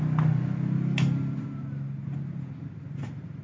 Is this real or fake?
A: real